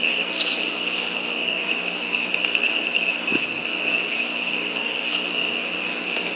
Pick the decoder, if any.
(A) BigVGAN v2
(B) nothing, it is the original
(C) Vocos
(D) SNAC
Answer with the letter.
D